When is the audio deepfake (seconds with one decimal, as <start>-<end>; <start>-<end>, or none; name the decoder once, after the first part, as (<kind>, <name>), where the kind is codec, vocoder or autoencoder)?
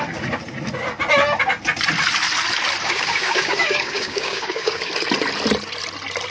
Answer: 2.8-4.9 (codec, DAC)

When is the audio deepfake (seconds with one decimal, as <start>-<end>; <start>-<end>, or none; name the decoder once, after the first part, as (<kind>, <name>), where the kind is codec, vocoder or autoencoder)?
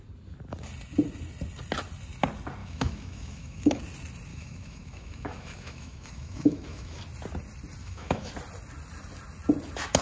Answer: 2.6-3.8 (autoencoder, DAC-VAE); 4.3-7.0; 7.8-8.3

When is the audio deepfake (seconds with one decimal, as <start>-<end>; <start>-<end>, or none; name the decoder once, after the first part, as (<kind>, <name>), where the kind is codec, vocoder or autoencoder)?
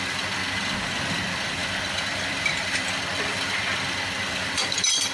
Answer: 0.0-0.4 (vocoder, BigVGAN v2); 1.0-5.1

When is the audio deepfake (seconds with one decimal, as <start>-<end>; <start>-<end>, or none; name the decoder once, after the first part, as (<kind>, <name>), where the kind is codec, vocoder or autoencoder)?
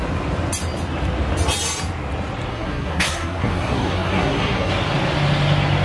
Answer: 2.5-4.7 (codec, SNAC)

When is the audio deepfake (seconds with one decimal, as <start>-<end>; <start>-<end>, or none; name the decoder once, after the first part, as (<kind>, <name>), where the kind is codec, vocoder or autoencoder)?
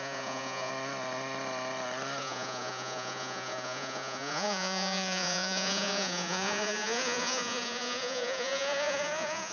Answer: 0.0-0.7 (vocoder, Vocos); 2.2-9.5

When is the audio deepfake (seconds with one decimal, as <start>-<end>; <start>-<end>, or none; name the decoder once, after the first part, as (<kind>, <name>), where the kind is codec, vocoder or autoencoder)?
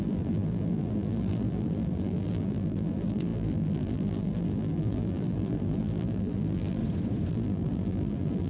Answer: 0.0-6.8 (vocoder, BigVGAN v2); 7.3-8.5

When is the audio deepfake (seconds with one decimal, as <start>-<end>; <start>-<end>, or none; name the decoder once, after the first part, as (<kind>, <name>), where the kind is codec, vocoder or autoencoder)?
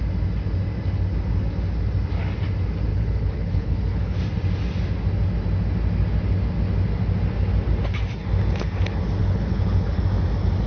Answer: 2.9-4.2 (codec, HILCodec); 9.2-10.0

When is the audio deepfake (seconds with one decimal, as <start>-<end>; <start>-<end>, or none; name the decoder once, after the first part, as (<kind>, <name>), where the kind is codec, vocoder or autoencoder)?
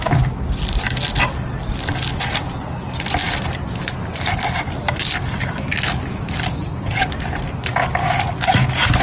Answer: 6.5-7.1 (vocoder, HiFi-GAN)